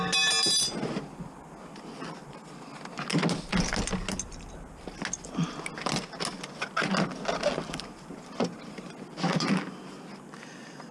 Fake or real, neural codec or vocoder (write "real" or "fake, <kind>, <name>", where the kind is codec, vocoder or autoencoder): real